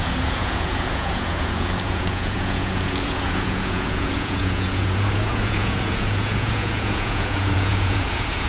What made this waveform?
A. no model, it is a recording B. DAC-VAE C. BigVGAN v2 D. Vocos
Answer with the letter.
D